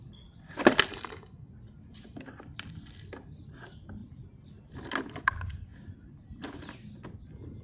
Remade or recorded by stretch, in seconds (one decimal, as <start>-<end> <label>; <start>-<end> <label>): 0.0-0.9 recorded; 0.9-1.5 remade; 1.5-7.6 recorded